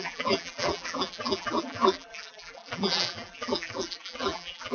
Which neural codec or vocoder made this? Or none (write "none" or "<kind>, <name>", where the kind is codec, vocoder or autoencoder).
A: vocoder, BigVGAN v2